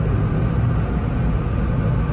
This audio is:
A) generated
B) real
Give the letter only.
B